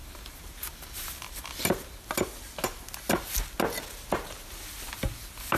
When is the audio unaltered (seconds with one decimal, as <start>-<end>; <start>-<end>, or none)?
2.2-5.6